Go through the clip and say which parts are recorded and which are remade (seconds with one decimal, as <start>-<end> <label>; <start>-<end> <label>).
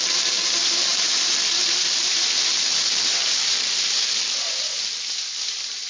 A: 0.0-5.9 recorded